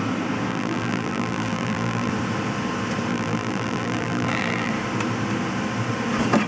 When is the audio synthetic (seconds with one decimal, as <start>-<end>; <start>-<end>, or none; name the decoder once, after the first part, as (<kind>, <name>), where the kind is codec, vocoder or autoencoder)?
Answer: 0.5-2.1 (vocoder, BigVGAN v2); 3.1-4.7